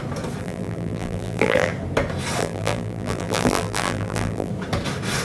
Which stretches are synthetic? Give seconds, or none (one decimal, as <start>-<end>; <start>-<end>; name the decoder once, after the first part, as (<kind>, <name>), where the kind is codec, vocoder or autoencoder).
0.4-1.7 (vocoder, BigVGAN v2); 2.4-4.5